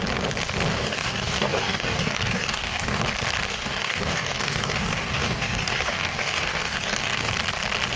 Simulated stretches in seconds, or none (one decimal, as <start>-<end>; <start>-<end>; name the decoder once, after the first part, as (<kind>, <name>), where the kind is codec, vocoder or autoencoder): 0.7-3.0 (codec, DAC); 3.5-7.3